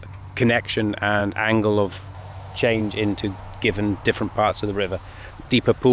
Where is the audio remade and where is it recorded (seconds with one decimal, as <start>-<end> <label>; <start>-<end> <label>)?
0.0-1.2 recorded; 1.2-2.8 remade; 2.8-4.5 recorded; 4.5-5.4 remade; 5.4-5.9 recorded